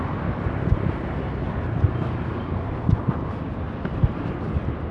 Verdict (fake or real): real